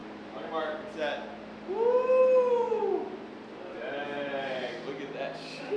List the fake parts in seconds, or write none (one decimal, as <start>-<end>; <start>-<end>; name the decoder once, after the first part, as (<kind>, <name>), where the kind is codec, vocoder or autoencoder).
0.0-0.5 (vocoder, BigVGAN v2); 4.0-4.7